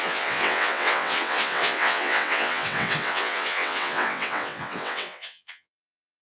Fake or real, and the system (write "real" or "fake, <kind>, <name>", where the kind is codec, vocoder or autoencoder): fake, vocoder, WaveNeXt